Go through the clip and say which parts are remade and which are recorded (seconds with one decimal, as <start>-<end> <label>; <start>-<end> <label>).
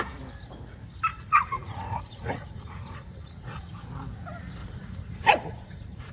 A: 0.0-1.1 recorded; 1.1-3.7 remade; 3.7-4.6 recorded; 4.6-6.1 remade